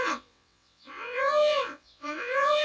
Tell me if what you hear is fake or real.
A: fake